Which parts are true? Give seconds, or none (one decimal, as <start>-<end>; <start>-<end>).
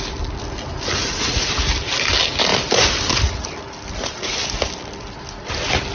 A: 0.0-1.0; 1.5-5.9